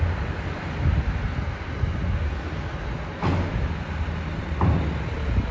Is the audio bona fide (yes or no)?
yes